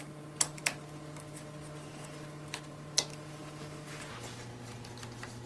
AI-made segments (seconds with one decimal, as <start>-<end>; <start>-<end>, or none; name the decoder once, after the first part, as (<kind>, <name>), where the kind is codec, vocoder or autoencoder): none